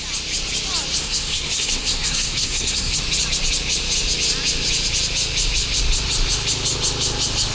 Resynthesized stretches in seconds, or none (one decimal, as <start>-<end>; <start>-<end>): 1.0-3.0